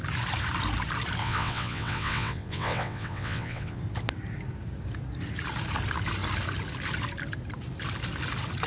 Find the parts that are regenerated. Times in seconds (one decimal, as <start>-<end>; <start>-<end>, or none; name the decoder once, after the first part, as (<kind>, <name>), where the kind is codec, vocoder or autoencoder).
1.2-3.8 (vocoder, WaveNeXt)